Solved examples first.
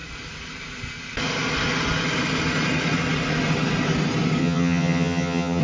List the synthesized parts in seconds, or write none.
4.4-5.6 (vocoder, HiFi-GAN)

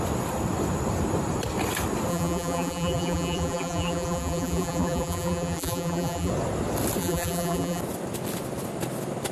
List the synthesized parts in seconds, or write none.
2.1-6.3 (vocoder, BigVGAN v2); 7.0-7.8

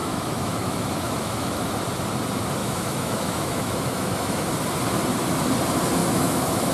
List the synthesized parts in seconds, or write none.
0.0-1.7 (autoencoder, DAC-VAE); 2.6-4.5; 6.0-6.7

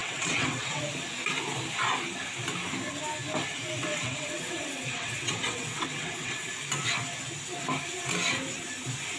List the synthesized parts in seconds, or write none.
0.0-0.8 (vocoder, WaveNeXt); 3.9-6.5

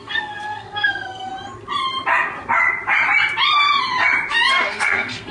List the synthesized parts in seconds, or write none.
0.0-1.3 (codec, SNAC); 4.5-5.3

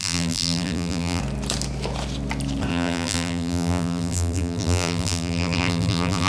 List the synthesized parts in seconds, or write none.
0.0-1.2 (vocoder, BigVGAN v2); 2.7-6.3

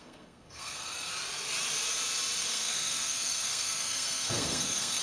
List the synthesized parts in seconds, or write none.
0.0-1.1 (codec, SNAC); 2.4-5.0